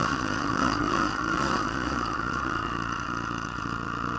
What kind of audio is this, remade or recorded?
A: remade